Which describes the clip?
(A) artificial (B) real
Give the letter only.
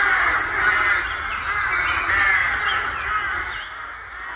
B